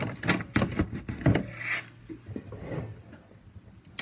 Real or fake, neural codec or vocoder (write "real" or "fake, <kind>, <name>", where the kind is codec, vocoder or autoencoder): real